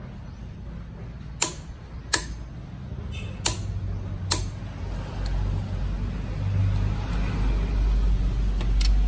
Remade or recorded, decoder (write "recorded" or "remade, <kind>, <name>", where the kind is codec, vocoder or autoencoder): recorded